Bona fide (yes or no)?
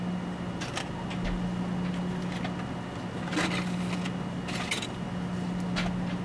yes